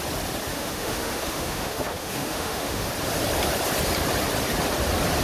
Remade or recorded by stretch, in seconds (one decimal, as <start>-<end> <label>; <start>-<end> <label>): 0.0-0.5 recorded; 0.5-2.9 remade; 2.9-5.2 recorded

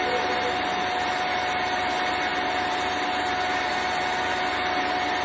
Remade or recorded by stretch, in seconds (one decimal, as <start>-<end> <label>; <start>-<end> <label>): 0.0-5.2 recorded

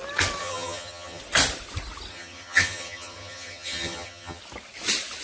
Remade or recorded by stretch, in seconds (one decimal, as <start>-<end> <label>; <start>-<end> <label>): 0.0-0.4 recorded; 0.4-1.2 remade; 1.2-2.1 recorded; 2.1-4.4 remade; 4.4-5.2 recorded

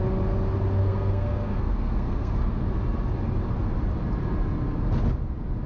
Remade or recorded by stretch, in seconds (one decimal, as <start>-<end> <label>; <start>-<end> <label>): 0.0-0.8 recorded; 0.8-2.7 remade; 2.7-5.7 recorded